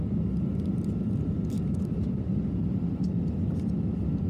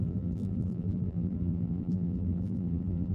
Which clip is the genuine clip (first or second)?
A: first